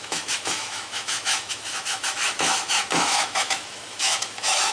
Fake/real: fake